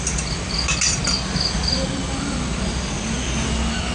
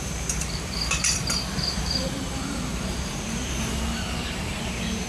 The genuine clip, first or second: first